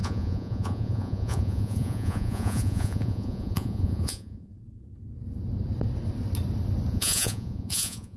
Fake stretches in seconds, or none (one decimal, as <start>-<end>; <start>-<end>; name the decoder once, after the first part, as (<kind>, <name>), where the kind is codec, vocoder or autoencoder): 0.0-4.5 (vocoder, Vocos); 6.9-8.2